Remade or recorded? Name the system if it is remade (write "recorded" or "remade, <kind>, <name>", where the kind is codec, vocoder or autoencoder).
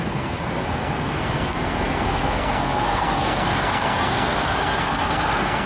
remade, codec, SNAC